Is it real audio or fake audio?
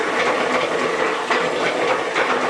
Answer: real